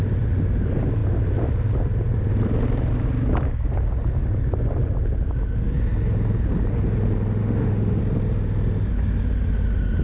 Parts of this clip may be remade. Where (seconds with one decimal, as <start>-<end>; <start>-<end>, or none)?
7.4-8.0